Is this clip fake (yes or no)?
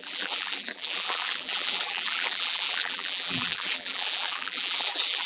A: yes